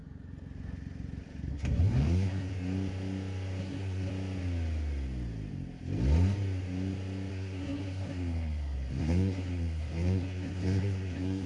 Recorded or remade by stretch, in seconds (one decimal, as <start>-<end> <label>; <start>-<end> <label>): 0.0-1.5 recorded; 1.5-2.5 remade; 2.5-3.6 recorded; 3.6-4.1 remade; 4.1-7.3 recorded; 7.3-11.5 remade

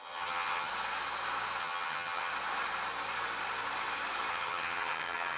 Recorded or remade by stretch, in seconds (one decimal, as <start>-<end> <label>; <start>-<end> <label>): 0.0-0.7 remade; 0.7-1.6 recorded; 1.6-2.3 remade; 2.3-4.3 recorded; 4.3-5.4 remade

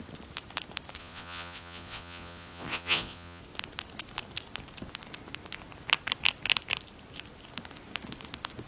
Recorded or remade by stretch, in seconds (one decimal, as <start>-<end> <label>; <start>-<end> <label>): 0.0-1.0 recorded; 1.0-3.4 remade; 3.4-8.7 recorded

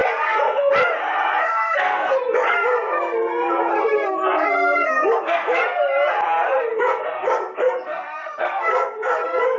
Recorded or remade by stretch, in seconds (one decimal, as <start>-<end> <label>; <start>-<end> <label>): 0.0-0.7 remade; 0.7-1.1 recorded; 1.1-5.8 remade; 5.8-6.7 recorded; 6.7-9.6 remade

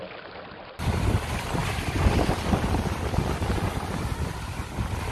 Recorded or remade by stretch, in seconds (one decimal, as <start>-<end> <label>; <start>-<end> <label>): 0.0-5.1 recorded

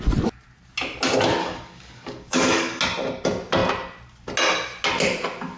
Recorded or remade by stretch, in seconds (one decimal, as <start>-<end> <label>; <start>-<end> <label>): 0.0-1.4 recorded; 1.4-2.8 remade; 2.8-5.6 recorded

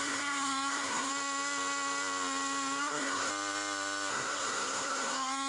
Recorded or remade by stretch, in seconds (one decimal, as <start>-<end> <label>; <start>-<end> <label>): 0.0-1.1 remade; 1.1-2.8 recorded; 2.8-3.3 remade; 3.3-4.1 recorded; 4.1-5.5 remade